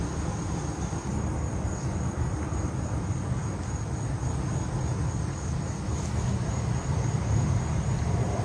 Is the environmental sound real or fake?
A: real